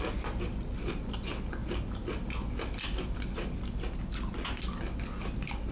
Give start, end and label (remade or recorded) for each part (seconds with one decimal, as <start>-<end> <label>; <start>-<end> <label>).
0.0-5.7 recorded

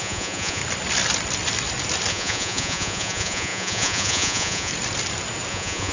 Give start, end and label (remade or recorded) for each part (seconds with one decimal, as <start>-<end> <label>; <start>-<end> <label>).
0.0-0.6 remade; 0.6-2.1 recorded; 2.1-4.7 remade; 4.7-5.5 recorded; 5.5-5.9 remade

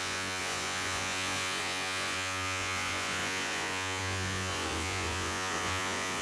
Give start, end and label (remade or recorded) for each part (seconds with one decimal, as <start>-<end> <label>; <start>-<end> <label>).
0.0-6.2 remade

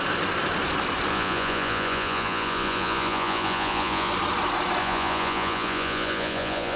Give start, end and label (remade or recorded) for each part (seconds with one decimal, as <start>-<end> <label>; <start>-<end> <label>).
0.0-1.1 recorded; 1.1-4.1 remade; 4.1-4.8 recorded; 4.8-6.8 remade

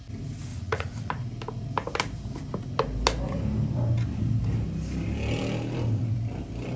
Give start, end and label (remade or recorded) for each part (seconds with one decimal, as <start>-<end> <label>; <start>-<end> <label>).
0.0-0.5 recorded; 0.5-1.1 remade; 1.1-6.8 recorded

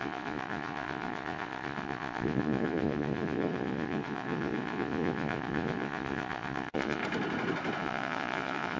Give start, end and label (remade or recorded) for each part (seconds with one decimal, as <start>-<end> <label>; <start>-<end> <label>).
0.0-7.0 remade; 7.0-7.8 recorded; 7.8-8.8 remade

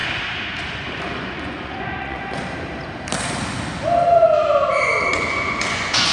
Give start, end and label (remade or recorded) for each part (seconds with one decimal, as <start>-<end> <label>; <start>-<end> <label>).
0.0-0.6 recorded; 0.6-2.4 remade; 2.4-5.1 recorded; 5.1-6.1 remade